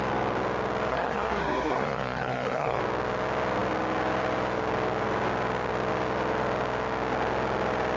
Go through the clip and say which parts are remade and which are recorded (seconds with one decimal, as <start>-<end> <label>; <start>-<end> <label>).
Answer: 0.0-0.9 recorded; 0.9-2.8 remade; 2.8-8.0 recorded